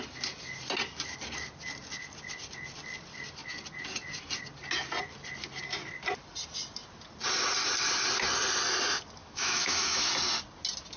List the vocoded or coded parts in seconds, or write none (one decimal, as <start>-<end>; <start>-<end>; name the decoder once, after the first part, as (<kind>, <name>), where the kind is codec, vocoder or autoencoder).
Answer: 9.2-10.1 (autoencoder, DAC-VAE)